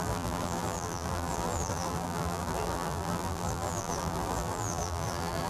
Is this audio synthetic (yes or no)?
yes